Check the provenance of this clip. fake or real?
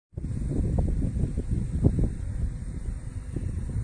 real